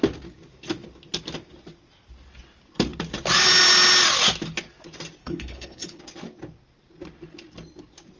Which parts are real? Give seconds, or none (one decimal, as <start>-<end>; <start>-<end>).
0.0-5.2; 6.0-8.2